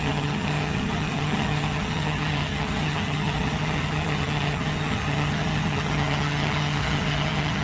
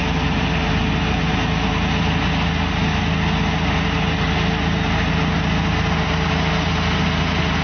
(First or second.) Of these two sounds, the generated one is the first